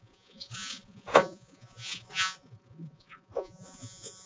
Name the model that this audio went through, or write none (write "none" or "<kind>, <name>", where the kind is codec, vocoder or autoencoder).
vocoder, Vocos